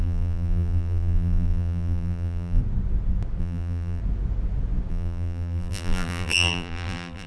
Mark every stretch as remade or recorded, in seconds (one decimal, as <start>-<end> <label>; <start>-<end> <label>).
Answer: 0.0-2.6 remade; 2.6-3.4 recorded; 3.4-4.0 remade; 4.0-4.9 recorded; 4.9-7.3 remade